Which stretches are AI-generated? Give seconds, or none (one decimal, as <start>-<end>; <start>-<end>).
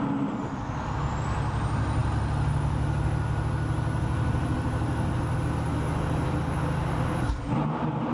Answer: none